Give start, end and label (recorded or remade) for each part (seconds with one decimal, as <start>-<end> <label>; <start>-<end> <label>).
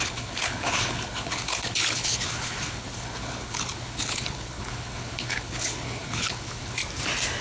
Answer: 0.0-6.8 remade; 6.8-7.4 recorded